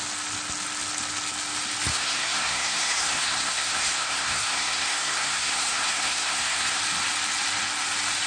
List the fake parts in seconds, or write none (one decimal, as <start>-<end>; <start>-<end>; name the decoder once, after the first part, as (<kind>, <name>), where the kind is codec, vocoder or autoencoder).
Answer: 1.9-6.8 (codec, SNAC)